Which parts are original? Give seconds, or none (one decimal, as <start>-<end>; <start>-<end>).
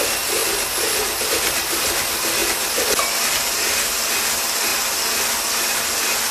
0.0-6.3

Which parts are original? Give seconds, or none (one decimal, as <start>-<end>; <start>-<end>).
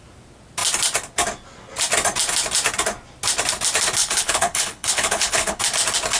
0.0-4.0; 5.6-6.2